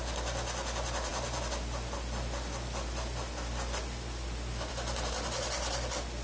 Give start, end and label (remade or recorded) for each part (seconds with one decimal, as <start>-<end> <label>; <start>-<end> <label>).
0.0-6.2 recorded